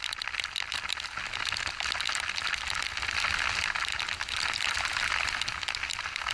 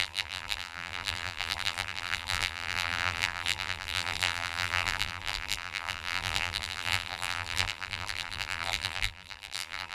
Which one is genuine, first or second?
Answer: first